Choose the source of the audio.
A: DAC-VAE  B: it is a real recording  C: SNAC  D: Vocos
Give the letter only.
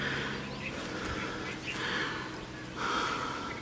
B